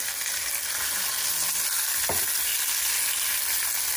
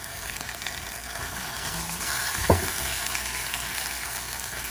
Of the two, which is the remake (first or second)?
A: second